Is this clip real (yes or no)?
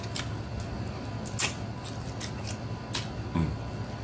yes